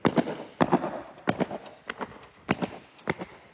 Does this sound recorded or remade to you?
recorded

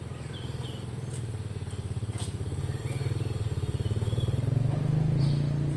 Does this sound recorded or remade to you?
recorded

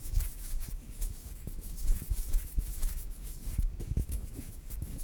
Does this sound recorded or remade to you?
remade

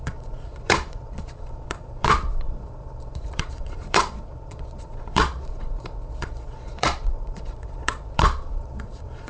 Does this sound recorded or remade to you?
remade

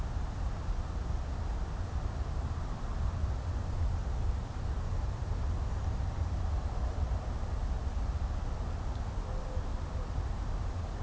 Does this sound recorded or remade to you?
recorded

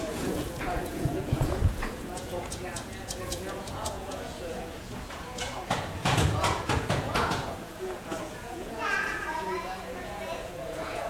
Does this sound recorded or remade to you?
remade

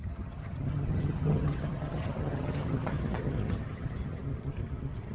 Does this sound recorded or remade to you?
remade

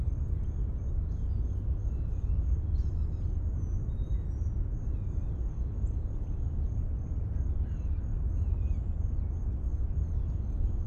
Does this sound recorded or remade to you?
recorded